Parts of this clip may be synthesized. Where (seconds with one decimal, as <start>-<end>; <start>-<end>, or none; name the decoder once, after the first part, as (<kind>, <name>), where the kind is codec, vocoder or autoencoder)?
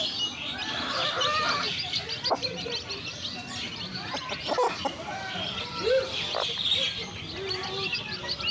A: none